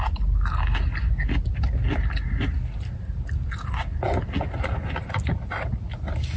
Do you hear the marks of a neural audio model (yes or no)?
no